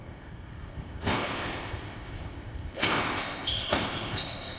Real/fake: fake